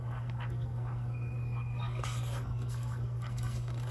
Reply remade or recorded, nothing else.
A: remade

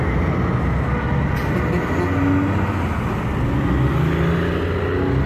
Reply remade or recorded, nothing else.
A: recorded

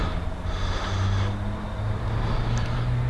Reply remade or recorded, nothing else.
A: recorded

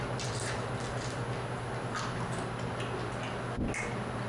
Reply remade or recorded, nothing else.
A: recorded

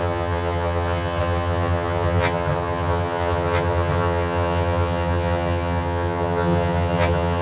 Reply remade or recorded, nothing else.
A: remade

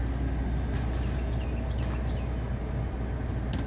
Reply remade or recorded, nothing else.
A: recorded